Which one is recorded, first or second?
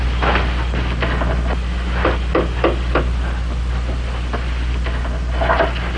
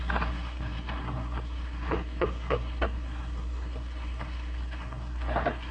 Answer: first